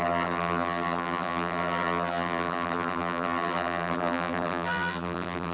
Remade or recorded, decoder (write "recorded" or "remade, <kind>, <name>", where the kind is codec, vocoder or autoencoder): remade, vocoder, BigVGAN v2